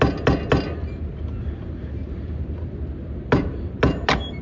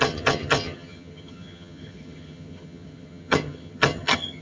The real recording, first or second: first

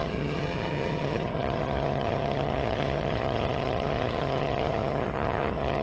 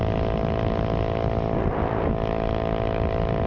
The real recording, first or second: second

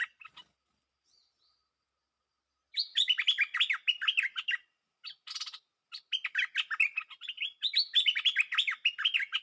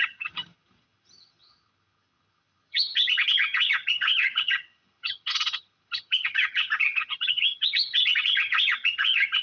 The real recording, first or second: first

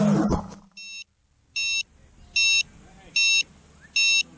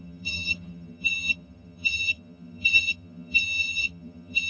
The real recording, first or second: first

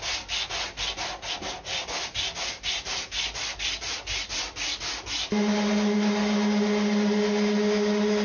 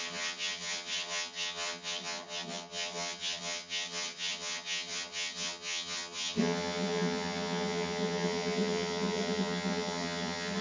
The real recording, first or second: first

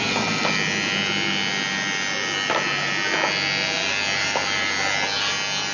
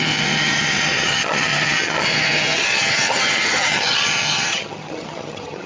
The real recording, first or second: first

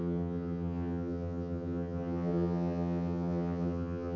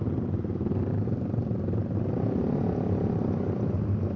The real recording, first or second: second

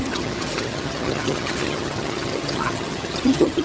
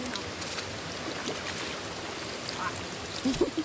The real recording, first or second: second